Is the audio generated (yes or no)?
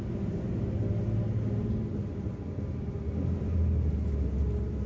no